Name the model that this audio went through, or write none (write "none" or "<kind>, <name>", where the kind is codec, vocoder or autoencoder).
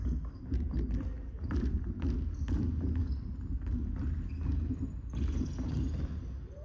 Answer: none